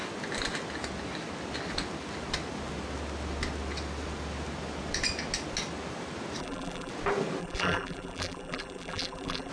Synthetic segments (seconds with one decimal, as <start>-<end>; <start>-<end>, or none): 6.4-6.9; 7.4-9.5